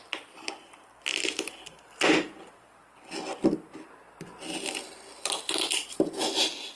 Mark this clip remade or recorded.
recorded